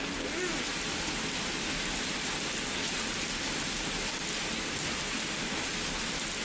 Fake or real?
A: real